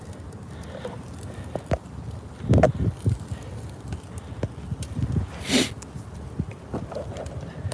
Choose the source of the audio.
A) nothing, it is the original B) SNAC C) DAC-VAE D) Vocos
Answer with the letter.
A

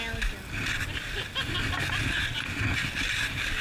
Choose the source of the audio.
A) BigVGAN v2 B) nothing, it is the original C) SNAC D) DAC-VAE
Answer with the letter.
B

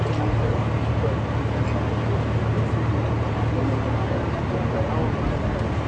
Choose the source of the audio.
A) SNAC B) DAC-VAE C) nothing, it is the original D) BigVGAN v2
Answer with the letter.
C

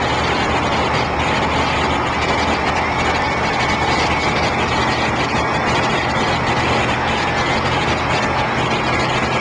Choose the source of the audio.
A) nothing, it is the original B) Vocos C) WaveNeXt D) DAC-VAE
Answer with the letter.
A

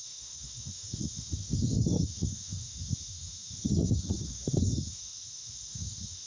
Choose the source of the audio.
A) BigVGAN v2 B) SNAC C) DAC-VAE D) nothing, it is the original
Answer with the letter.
C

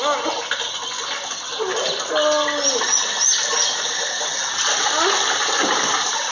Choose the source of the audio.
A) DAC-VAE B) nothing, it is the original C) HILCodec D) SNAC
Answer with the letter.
B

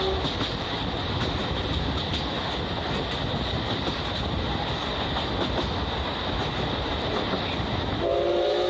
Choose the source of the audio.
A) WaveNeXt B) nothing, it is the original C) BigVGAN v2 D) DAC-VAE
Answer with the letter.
B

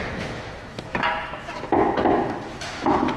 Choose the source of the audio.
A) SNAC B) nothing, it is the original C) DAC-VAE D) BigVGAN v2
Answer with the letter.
C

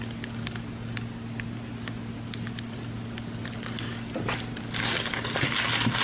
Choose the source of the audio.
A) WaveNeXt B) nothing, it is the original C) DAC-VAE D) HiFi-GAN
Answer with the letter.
B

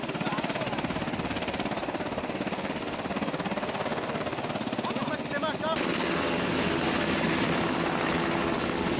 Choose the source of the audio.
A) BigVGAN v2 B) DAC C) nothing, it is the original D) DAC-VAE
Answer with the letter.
C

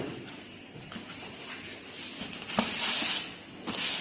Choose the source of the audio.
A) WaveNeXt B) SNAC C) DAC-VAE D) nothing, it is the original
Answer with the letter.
D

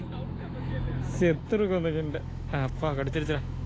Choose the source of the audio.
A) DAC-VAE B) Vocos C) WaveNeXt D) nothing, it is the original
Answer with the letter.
A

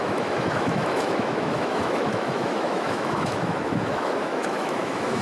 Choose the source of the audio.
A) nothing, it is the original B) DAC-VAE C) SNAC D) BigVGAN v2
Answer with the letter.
B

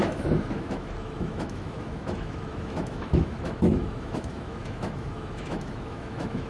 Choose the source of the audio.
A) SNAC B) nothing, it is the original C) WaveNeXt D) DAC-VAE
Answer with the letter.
D